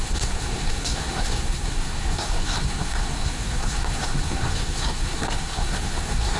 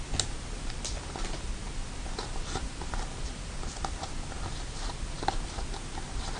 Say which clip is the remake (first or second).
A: first